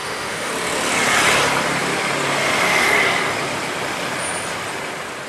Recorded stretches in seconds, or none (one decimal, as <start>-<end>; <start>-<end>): 0.5-5.3